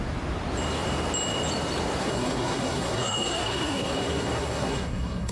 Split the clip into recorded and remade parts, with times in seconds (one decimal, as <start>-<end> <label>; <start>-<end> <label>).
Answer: 0.0-2.0 recorded; 2.0-5.3 remade